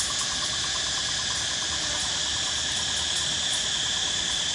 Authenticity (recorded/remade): recorded